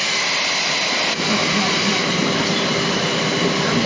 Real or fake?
real